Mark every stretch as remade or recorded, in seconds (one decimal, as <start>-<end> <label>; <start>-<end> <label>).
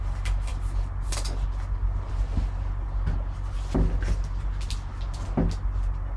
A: 0.0-6.2 recorded